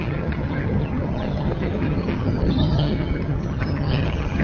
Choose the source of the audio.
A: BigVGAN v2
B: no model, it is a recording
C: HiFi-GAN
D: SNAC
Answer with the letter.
C